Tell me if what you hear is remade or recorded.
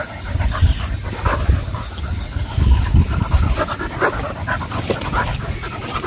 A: recorded